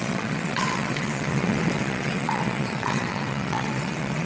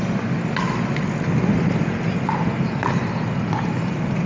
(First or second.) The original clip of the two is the second